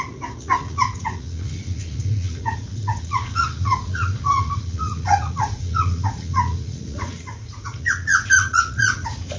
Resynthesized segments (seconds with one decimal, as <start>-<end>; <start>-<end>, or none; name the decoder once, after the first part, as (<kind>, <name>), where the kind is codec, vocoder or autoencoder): 0.0-9.4 (vocoder, Vocos)